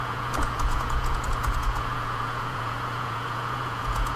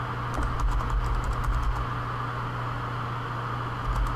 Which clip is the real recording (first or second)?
second